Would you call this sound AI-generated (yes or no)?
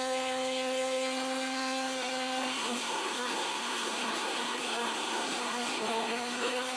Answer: yes